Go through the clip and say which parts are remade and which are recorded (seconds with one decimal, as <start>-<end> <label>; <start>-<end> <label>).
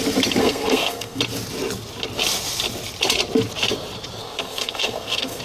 0.0-0.4 recorded; 0.4-1.2 remade; 1.2-4.2 recorded; 4.2-5.4 remade